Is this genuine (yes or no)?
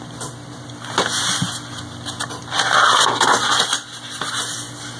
yes